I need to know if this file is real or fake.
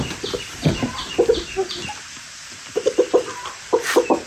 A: real